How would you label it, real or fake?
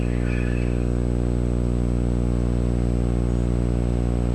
real